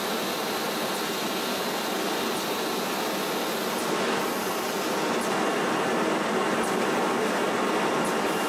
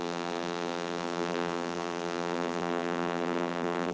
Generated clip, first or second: second